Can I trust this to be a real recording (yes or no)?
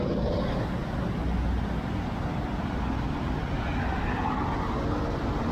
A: yes